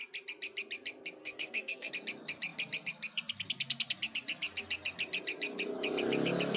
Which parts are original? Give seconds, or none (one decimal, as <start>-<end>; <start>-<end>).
0.0-1.2; 1.9-6.6